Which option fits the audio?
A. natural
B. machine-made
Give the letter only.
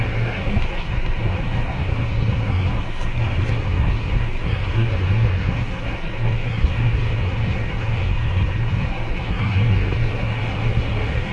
B